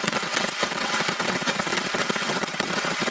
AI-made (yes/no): yes